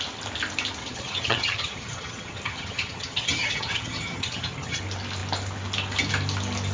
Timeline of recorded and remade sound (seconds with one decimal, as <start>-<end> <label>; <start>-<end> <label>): 0.0-0.8 recorded; 0.8-4.8 remade; 4.8-6.7 recorded